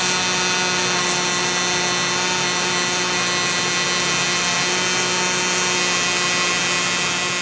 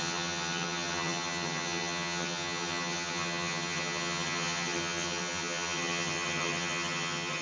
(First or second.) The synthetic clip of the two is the second